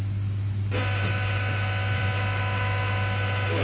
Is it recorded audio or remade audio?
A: recorded